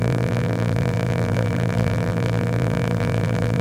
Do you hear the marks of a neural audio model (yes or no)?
yes